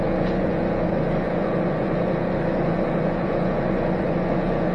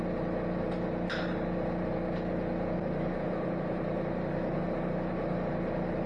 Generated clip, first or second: first